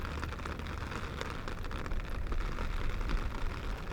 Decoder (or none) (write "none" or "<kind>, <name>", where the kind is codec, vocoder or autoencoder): none